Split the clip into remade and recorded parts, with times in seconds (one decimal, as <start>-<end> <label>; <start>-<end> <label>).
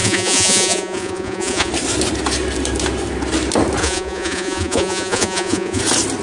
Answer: 0.0-1.7 remade; 1.7-3.8 recorded; 3.8-5.8 remade; 5.8-6.2 recorded